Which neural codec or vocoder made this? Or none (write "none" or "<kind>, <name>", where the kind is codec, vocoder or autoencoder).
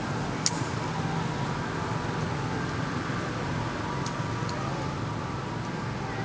none